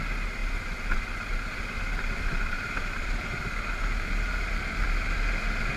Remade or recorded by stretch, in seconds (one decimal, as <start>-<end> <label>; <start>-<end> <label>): 0.0-5.8 recorded